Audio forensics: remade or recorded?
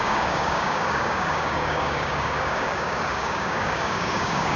remade